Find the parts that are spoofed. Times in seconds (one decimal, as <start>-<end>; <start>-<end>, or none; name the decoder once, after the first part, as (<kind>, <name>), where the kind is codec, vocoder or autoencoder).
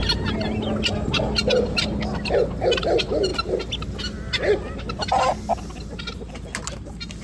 none